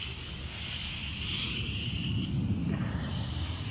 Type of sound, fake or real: real